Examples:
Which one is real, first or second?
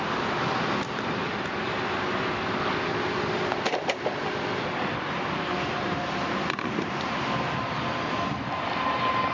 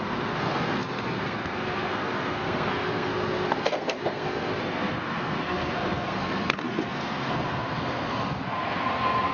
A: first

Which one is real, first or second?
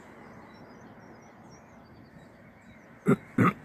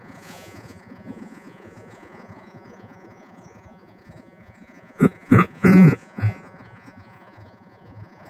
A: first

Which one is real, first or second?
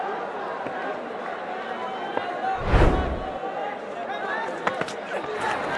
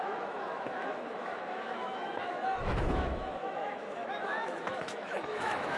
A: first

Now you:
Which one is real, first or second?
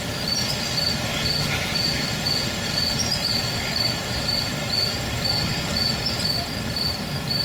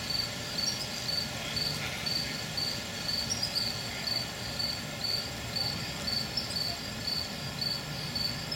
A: second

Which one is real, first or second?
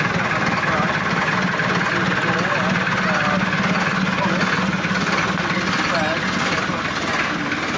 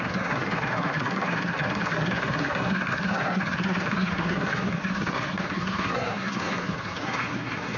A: first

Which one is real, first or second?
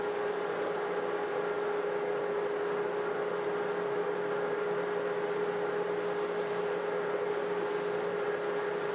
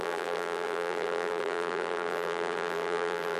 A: first